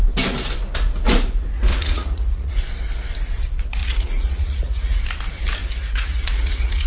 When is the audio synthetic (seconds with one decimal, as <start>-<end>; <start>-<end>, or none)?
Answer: 1.7-2.5; 3.8-5.0; 5.6-6.9